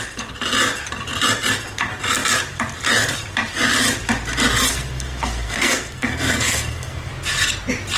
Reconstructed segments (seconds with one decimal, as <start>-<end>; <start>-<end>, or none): 4.7-7.1

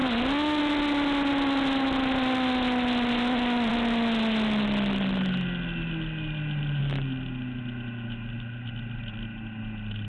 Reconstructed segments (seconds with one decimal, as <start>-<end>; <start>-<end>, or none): none